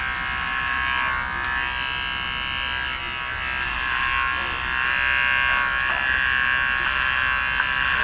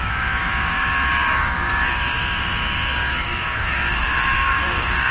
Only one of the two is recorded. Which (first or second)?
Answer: first